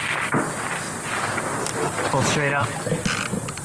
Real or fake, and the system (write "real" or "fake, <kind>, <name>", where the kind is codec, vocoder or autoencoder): real